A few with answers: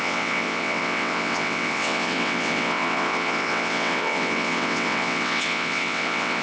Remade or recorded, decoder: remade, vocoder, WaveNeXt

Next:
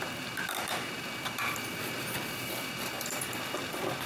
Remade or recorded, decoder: remade, vocoder, BigVGAN v2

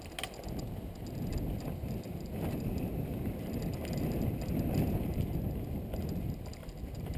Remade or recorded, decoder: recorded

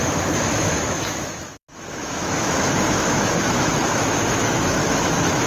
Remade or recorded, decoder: remade, autoencoder, DAC-VAE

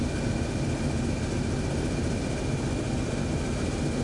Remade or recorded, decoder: recorded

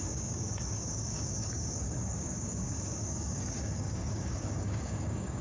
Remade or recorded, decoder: remade, codec, DAC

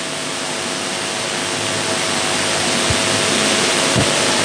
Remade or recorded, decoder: recorded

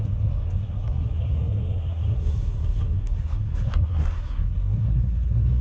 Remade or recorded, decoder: remade, codec, SNAC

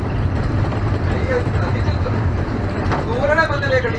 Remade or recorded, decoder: remade, vocoder, BigVGAN v2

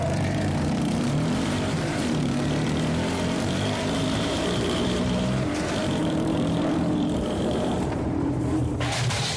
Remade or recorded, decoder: remade, vocoder, BigVGAN v2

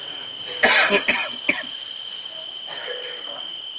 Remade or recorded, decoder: recorded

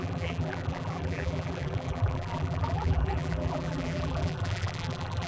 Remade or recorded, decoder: remade, vocoder, BigVGAN v2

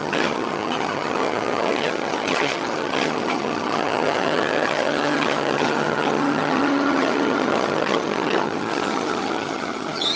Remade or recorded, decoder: remade, vocoder, HiFi-GAN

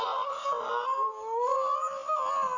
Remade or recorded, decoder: recorded